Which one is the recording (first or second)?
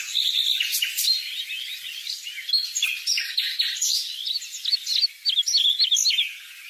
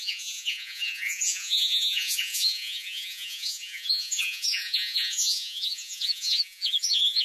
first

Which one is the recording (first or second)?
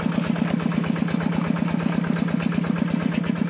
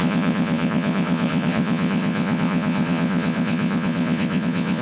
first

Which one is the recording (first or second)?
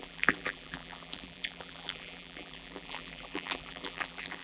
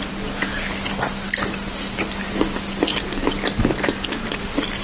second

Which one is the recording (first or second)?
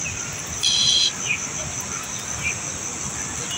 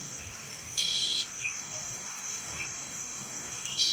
first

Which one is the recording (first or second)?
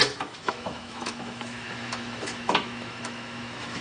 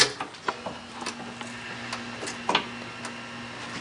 second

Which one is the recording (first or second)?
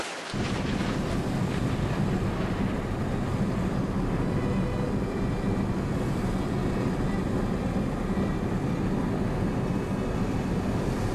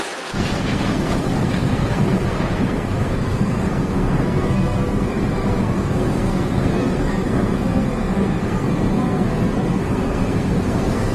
first